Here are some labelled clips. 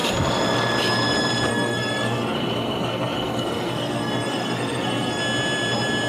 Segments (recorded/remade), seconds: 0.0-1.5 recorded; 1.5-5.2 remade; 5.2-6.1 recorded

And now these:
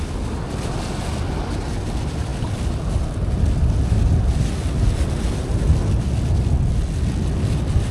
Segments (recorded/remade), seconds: 0.0-7.9 recorded

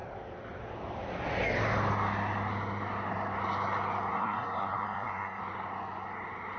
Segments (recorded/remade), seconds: 0.0-4.1 recorded; 4.1-5.4 remade; 5.4-6.6 recorded